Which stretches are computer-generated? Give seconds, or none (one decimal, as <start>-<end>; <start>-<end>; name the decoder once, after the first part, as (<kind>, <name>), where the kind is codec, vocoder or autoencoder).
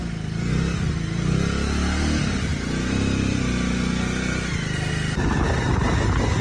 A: none